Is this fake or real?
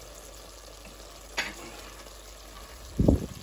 real